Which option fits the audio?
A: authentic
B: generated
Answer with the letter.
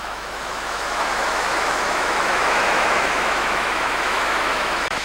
B